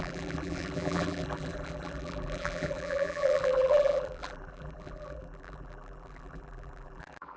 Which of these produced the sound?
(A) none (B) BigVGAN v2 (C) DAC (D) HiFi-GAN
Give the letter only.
B